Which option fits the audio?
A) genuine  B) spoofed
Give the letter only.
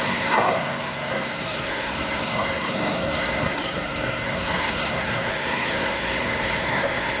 B